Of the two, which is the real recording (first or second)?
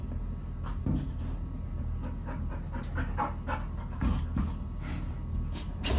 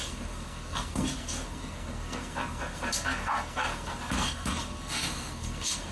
first